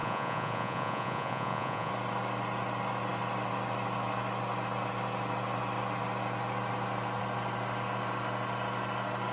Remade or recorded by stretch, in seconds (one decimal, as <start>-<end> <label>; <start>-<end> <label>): 0.0-1.9 remade; 1.9-9.3 recorded

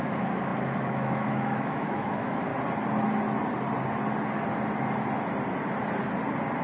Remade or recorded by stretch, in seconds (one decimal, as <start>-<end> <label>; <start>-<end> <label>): 0.0-2.5 remade; 2.5-6.6 recorded

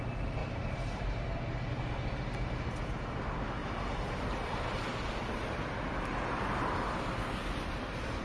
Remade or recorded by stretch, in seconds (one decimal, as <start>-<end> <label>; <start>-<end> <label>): 0.0-0.4 recorded; 0.4-1.7 remade; 1.7-3.6 recorded; 3.6-6.8 remade; 6.8-8.2 recorded

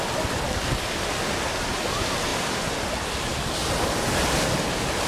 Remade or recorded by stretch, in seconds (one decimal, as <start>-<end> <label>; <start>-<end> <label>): 0.0-5.1 recorded

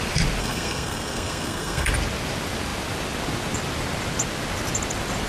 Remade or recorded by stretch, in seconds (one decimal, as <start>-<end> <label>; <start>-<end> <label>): 0.0-0.4 recorded; 0.4-1.9 remade; 1.9-5.3 recorded